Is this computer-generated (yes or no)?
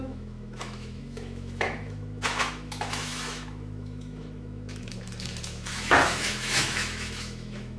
yes